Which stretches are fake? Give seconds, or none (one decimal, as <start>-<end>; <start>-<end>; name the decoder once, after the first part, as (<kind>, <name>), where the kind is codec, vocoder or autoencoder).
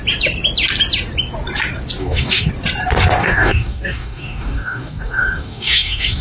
2.0-2.5 (codec, DAC); 3.2-6.2